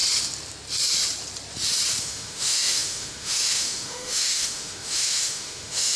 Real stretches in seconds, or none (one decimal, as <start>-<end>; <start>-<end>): 0.0-2.0

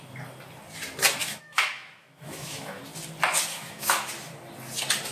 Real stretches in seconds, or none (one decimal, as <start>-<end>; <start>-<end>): 0.0-1.2; 2.8-3.5; 4.1-5.1

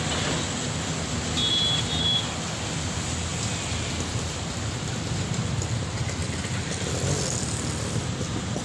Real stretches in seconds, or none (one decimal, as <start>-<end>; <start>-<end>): 0.0-8.6

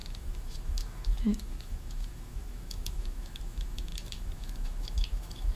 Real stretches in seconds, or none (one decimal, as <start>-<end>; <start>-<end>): none

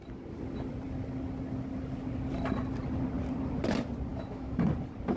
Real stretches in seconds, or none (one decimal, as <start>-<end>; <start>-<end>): 0.0-4.1; 4.7-5.2

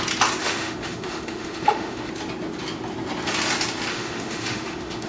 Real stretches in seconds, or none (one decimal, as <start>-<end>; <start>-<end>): 0.0-0.4; 2.1-3.9

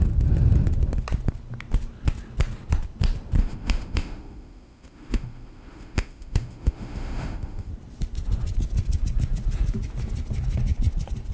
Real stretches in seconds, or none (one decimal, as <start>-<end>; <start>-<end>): 0.0-3.4; 7.7-11.3